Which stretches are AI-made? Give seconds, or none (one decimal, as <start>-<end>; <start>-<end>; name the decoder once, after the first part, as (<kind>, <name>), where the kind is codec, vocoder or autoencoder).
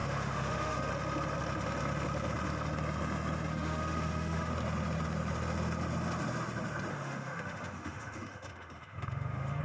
0.0-0.9 (autoencoder, DAC-VAE); 3.5-4.5; 6.9-9.6